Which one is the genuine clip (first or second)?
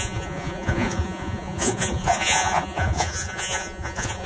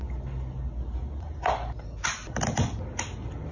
second